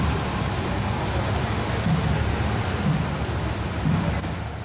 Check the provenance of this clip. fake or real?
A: real